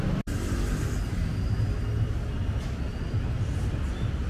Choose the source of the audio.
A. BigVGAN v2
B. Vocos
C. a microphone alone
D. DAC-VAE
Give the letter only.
C